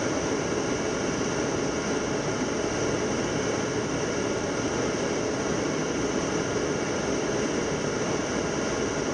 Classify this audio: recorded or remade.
recorded